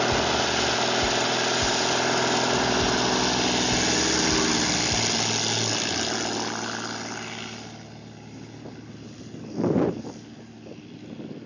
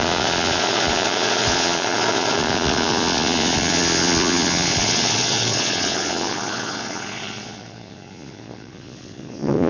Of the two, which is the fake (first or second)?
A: second